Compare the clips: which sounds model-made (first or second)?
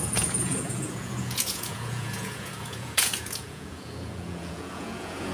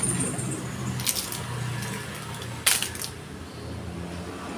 first